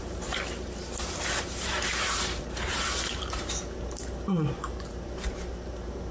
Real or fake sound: fake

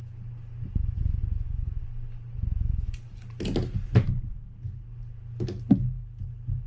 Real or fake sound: real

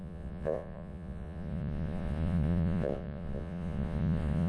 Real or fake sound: fake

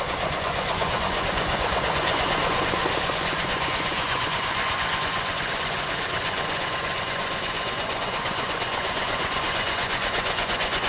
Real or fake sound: fake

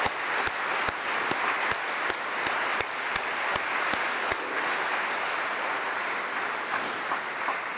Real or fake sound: real